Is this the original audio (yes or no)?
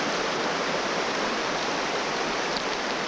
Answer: no